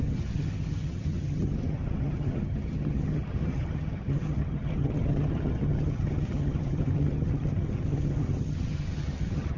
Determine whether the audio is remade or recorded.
remade